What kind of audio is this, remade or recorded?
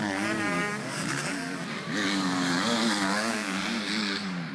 remade